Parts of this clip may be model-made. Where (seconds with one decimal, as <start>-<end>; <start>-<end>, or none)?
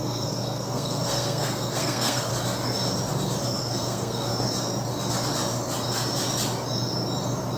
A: 0.0-2.3; 3.6-4.3